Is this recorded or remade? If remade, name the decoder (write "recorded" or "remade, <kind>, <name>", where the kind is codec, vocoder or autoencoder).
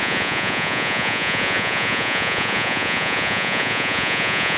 remade, vocoder, Vocos